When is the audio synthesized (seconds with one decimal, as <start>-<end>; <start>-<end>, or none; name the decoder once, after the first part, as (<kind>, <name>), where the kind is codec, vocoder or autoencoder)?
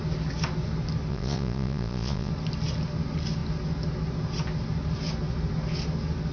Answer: 1.1-2.3 (vocoder, Vocos)